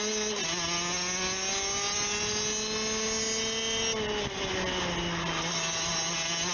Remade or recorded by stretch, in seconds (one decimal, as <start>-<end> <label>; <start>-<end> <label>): 0.0-6.5 recorded